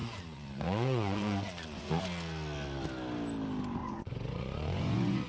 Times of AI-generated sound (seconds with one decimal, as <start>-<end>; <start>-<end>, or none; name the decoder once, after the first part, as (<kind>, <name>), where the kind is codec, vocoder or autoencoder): 0.0-2.0 (vocoder, Vocos); 3.8-5.3